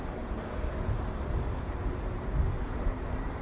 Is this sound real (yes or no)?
no